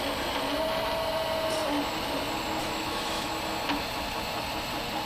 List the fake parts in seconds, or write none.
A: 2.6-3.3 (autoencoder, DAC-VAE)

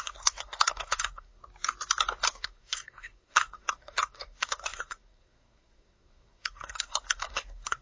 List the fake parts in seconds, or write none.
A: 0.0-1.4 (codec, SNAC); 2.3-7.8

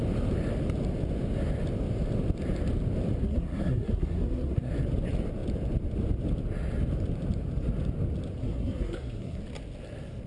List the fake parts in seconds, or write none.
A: 3.2-4.7 (codec, SNAC); 8.4-9.4